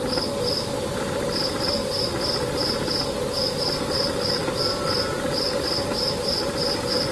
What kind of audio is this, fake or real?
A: real